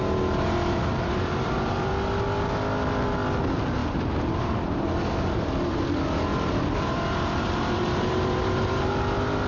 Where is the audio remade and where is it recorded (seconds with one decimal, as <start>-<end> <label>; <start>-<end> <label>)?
0.0-0.9 recorded; 0.9-1.9 remade; 1.9-3.8 recorded; 3.8-5.8 remade; 5.8-6.3 recorded; 6.3-8.9 remade; 8.9-9.5 recorded